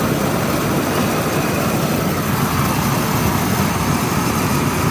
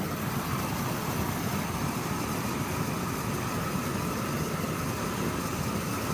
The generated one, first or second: second